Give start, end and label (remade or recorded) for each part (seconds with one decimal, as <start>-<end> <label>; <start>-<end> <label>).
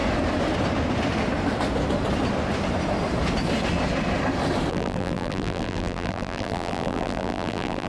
0.0-4.7 recorded; 4.7-7.9 remade